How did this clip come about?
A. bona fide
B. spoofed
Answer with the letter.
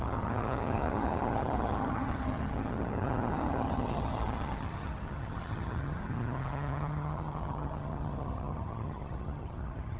B